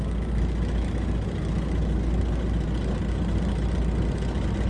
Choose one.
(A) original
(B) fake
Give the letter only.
A